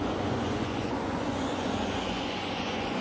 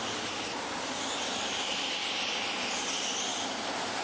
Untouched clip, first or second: second